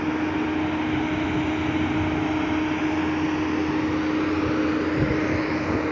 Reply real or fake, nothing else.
real